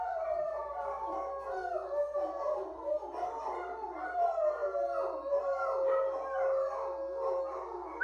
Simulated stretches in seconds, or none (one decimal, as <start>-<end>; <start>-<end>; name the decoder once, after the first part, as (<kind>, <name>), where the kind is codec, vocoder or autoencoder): none